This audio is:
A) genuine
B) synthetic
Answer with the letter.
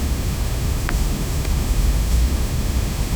B